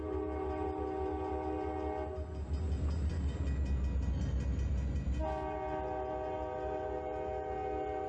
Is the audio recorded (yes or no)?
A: yes